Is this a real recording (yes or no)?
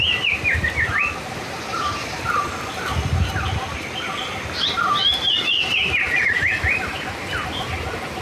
yes